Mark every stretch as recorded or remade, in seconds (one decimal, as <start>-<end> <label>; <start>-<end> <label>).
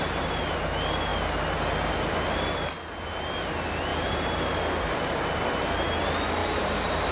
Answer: 0.0-3.9 recorded; 3.9-4.6 remade; 4.6-6.4 recorded; 6.4-7.1 remade